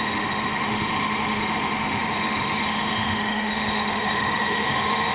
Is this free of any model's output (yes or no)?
no